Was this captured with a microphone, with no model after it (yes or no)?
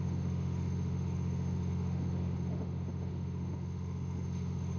no